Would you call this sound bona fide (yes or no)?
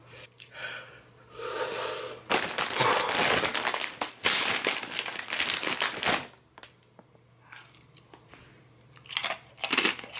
yes